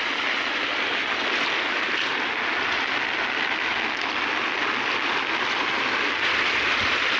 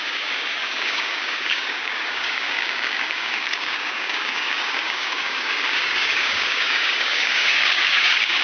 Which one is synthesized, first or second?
second